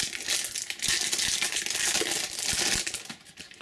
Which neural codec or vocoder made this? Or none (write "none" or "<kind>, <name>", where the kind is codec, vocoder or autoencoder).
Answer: none